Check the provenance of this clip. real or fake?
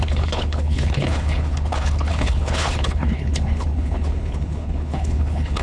fake